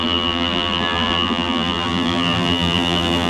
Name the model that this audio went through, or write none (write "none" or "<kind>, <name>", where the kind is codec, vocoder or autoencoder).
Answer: vocoder, BigVGAN v2